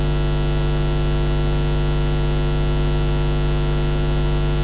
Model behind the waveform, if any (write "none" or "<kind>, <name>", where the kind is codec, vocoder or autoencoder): none